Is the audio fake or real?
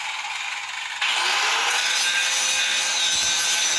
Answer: real